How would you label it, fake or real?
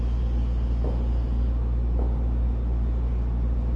real